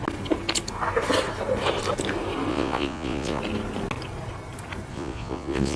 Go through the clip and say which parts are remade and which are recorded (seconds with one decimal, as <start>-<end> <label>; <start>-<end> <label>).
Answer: 0.0-2.5 recorded; 2.5-3.4 remade; 3.4-4.9 recorded; 4.9-5.8 remade